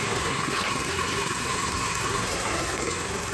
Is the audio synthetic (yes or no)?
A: yes